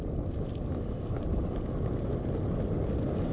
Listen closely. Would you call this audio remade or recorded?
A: recorded